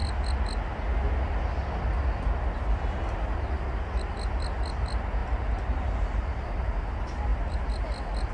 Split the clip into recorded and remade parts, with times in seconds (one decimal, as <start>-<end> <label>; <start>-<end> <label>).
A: 0.0-8.3 recorded